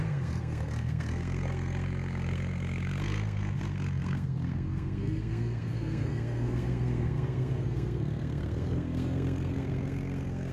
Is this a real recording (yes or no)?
no